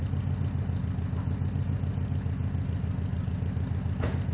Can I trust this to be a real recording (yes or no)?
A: yes